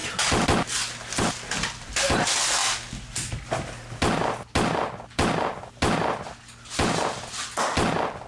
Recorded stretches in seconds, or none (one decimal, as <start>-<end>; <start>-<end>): 0.0-8.3